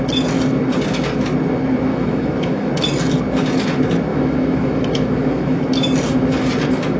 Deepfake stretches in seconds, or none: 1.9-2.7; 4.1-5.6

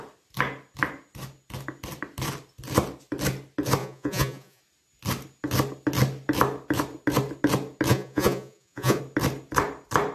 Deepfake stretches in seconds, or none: 3.8-4.6; 7.9-9.0

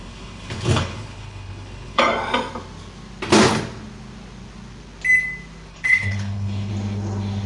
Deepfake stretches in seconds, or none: 0.0-2.0; 5.7-6.7

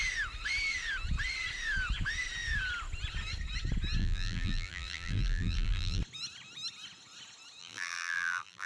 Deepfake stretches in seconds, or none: 4.0-6.0; 7.6-8.7

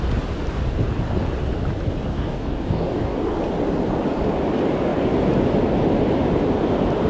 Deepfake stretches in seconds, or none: 2.1-3.3

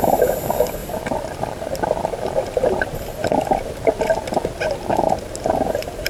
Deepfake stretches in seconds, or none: 0.0-0.8; 2.7-3.2; 4.8-6.1